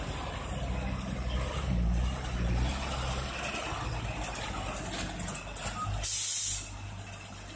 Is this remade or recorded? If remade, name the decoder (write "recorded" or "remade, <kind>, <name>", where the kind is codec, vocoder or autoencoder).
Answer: recorded